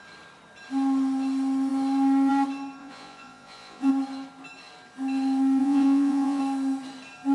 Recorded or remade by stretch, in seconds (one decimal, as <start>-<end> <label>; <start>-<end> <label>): 0.0-2.8 recorded; 2.8-3.9 remade; 3.9-5.6 recorded; 5.6-6.4 remade; 6.4-7.3 recorded